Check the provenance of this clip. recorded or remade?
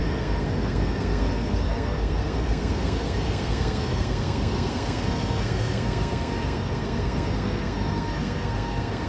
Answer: remade